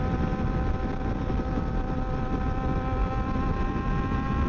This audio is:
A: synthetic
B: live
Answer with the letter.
B